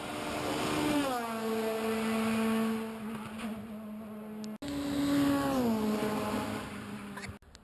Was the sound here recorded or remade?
recorded